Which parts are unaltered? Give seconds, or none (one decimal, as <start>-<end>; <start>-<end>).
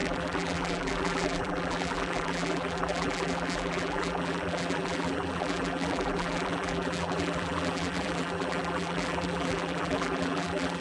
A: none